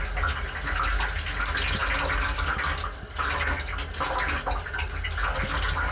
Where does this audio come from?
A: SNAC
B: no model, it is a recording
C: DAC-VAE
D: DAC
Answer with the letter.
B